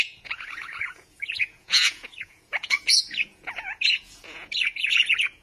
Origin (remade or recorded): remade